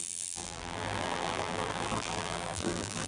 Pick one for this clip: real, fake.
fake